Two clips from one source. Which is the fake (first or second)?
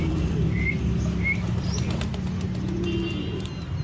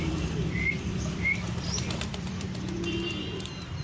second